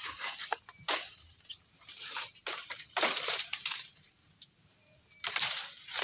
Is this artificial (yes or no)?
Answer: yes